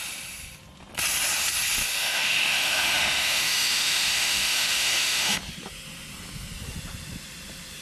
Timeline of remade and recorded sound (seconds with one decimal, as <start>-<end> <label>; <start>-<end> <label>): 0.0-1.8 recorded; 1.8-5.4 remade; 5.4-7.8 recorded